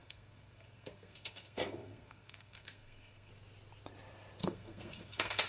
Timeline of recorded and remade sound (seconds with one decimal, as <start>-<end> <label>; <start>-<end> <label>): 0.0-3.3 remade; 3.3-4.4 recorded; 4.4-5.5 remade